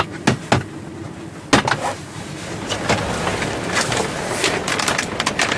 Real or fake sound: real